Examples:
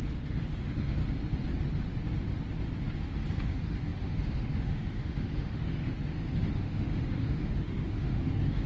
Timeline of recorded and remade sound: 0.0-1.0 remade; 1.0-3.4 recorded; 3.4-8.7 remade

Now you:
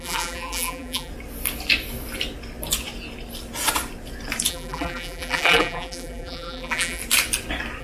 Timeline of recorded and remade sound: 0.0-1.1 remade; 1.1-4.5 recorded; 4.5-7.0 remade; 7.0-7.8 recorded

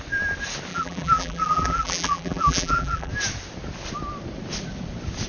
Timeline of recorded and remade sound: 0.0-0.7 recorded; 0.7-3.1 remade; 3.1-5.3 recorded

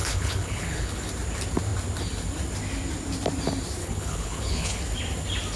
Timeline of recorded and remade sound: 0.0-1.1 remade; 1.1-3.8 recorded; 3.8-4.8 remade; 4.8-5.6 recorded

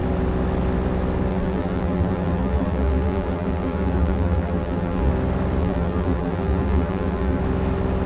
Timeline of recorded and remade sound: 0.0-1.3 recorded; 1.3-5.1 remade; 5.1-5.6 recorded; 5.6-7.4 remade; 7.4-8.1 recorded

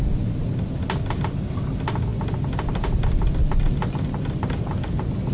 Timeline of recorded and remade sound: 0.0-5.3 recorded

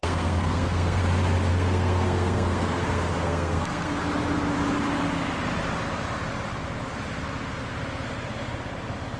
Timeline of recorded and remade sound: 0.0-1.0 remade; 1.0-1.5 recorded; 1.5-3.9 remade; 3.9-9.2 recorded

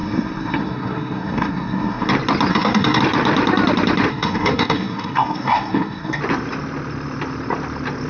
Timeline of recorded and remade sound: 0.0-2.1 remade; 2.1-2.5 recorded; 2.5-3.0 remade; 3.0-4.1 recorded; 4.1-6.2 remade; 6.2-8.1 recorded